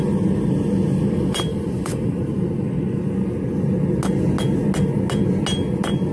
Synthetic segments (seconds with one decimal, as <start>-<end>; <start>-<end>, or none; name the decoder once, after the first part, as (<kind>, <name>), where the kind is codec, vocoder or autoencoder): 1.5-2.5 (vocoder, BigVGAN v2)